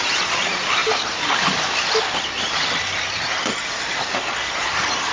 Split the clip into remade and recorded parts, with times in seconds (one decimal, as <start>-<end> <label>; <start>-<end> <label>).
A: 0.0-5.1 recorded